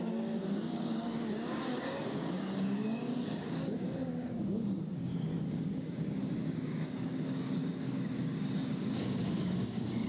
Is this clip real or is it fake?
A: fake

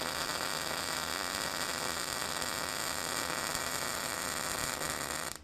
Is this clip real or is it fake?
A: real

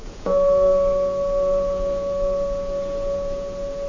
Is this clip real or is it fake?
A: fake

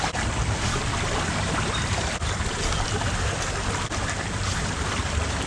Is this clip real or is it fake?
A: real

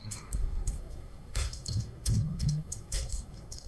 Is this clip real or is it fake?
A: fake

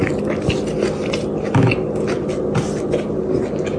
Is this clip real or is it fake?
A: real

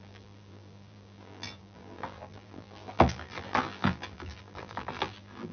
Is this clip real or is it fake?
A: fake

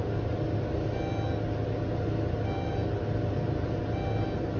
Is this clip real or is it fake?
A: real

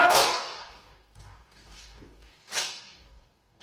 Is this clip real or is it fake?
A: fake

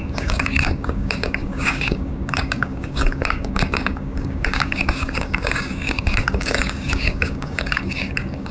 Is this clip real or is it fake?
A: fake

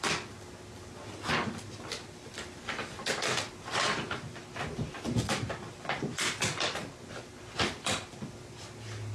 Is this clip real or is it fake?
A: real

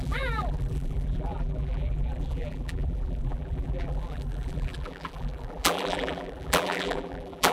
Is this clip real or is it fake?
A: fake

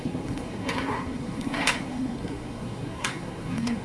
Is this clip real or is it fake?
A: fake